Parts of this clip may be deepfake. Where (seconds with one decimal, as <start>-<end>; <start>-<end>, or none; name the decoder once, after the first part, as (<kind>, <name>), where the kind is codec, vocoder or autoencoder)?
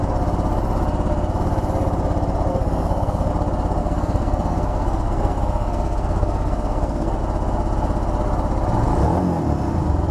2.5-3.3 (codec, SNAC); 3.8-7.2